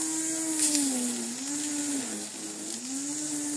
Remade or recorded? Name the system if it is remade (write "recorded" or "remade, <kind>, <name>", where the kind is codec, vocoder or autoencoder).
recorded